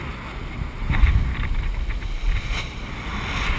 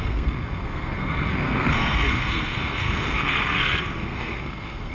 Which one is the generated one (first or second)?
second